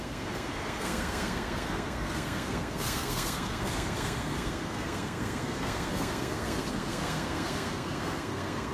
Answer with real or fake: fake